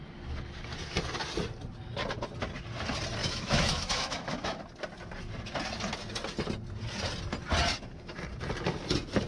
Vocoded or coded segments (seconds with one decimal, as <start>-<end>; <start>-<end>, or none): 3.2-4.6